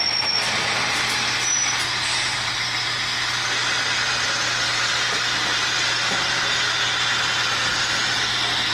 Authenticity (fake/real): real